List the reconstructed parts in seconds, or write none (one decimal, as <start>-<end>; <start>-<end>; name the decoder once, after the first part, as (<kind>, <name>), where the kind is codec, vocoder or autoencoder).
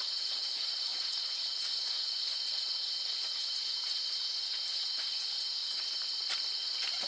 0.0-5.6 (vocoder, Vocos); 6.5-7.1